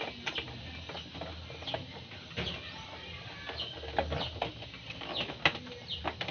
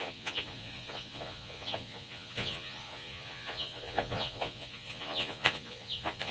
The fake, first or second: second